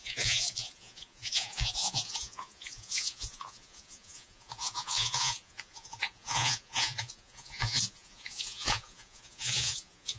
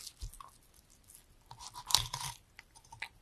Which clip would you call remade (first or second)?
first